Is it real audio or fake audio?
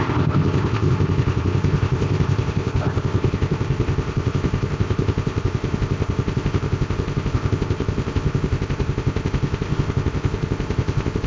fake